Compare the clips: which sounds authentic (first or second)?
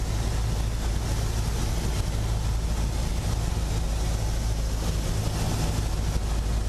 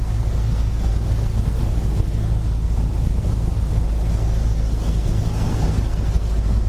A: first